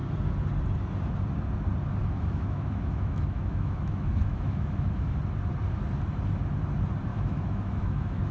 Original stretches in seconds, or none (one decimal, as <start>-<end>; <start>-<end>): 0.0-2.0; 5.2-7.1